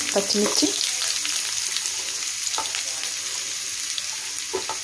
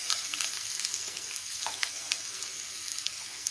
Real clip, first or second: first